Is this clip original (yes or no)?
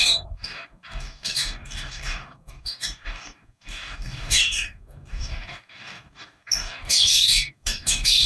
no